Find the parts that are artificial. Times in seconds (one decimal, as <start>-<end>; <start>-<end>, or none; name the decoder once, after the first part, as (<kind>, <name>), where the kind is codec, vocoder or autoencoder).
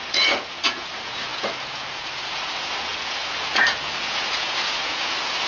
0.0-5.5 (vocoder, Vocos)